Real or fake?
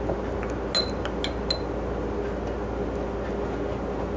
real